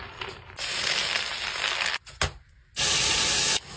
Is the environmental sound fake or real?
real